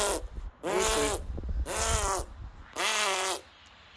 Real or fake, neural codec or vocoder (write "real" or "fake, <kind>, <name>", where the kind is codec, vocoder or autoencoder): real